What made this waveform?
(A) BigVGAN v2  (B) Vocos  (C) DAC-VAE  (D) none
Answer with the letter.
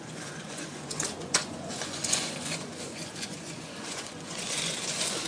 B